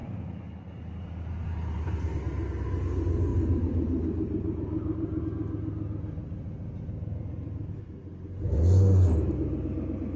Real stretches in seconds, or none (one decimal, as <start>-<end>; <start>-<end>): 1.9-3.3; 5.2-10.2